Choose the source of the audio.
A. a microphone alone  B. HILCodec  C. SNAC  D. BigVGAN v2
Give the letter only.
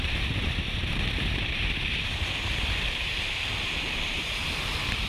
D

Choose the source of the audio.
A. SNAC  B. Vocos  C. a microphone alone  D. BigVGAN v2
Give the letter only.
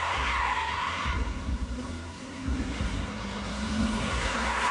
A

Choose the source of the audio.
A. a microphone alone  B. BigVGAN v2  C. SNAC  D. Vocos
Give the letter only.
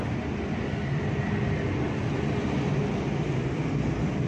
A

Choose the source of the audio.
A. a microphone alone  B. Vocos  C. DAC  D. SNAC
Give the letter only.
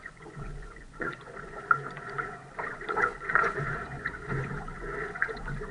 B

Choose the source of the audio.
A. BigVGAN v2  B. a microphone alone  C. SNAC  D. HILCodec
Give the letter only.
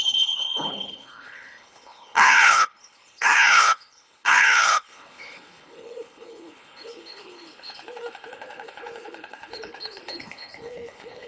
D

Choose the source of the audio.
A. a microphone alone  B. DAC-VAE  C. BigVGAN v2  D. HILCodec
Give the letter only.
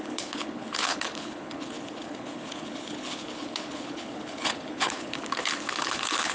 D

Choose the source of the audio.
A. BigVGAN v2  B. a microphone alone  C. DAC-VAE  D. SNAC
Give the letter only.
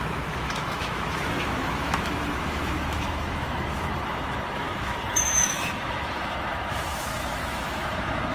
C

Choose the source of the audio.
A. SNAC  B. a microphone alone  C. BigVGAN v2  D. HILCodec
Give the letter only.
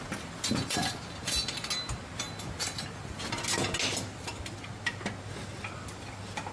B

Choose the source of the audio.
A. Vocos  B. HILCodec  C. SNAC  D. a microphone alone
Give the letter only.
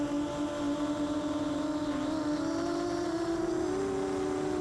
D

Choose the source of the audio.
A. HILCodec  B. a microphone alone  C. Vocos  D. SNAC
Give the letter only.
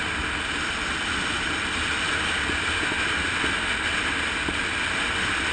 B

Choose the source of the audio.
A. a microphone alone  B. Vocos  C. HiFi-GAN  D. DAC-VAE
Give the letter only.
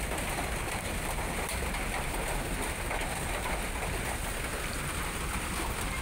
A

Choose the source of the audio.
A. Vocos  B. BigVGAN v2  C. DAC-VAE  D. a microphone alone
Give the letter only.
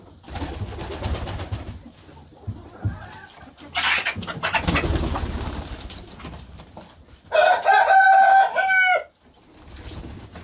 D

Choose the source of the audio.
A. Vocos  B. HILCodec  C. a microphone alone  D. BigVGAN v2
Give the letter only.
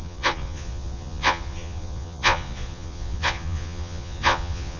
A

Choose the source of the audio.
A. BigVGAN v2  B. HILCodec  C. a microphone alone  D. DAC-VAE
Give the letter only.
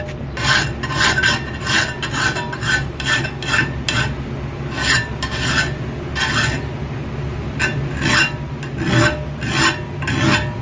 C